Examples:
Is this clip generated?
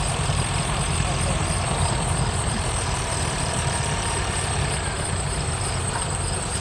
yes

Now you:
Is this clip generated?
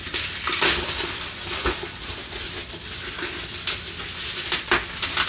no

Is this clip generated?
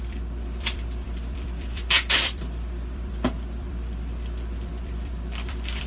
yes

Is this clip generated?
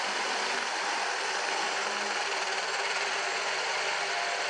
yes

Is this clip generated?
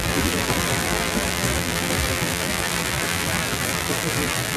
yes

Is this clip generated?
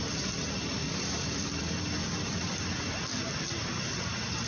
yes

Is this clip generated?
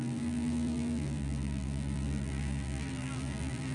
yes